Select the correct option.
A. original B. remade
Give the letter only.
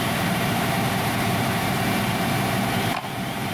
B